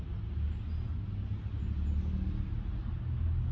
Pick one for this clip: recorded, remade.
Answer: recorded